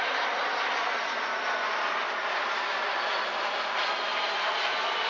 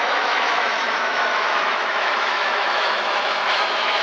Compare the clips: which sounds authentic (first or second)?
first